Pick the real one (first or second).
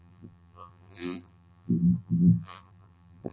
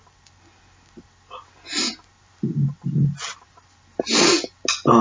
second